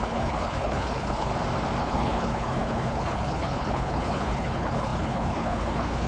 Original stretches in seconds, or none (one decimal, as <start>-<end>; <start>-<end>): 1.3-1.8